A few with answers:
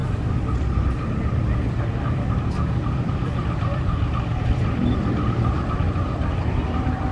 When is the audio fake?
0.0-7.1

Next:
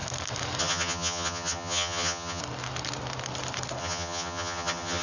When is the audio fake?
0.6-2.4; 3.8-5.0

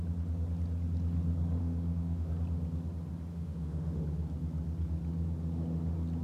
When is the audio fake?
1.6-2.3; 3.3-4.0

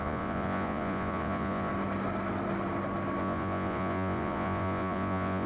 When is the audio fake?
0.0-1.7; 3.2-5.5

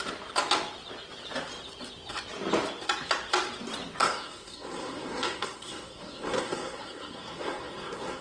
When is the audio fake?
4.0-8.2